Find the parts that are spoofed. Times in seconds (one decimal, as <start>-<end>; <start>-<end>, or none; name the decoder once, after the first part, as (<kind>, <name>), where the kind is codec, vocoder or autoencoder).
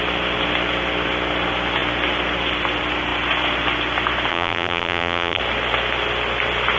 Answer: 4.3-5.4 (vocoder, BigVGAN v2)